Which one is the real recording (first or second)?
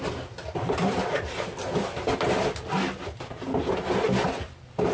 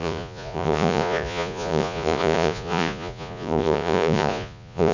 first